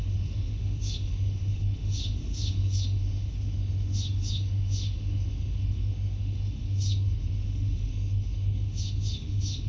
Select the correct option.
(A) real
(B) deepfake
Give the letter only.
B